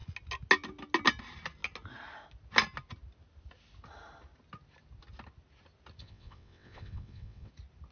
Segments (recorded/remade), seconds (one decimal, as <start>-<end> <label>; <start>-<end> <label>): 0.0-6.0 recorded; 6.0-7.5 remade; 7.5-7.9 recorded